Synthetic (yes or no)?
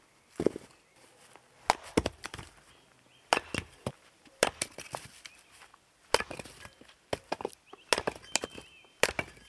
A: no